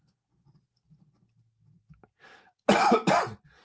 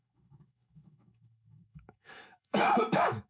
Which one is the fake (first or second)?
second